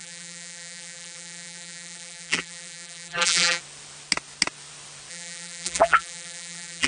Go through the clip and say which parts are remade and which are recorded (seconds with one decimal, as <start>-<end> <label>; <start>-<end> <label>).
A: 0.0-3.6 remade; 3.6-5.1 recorded; 5.1-6.9 remade